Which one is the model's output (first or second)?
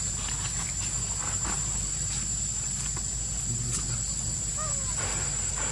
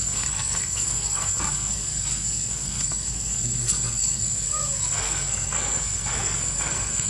second